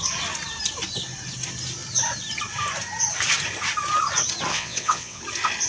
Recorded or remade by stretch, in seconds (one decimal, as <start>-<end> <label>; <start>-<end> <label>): 0.0-4.5 recorded; 4.5-5.2 remade; 5.2-5.7 recorded